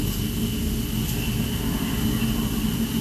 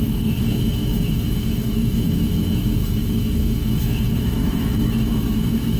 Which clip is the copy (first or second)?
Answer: second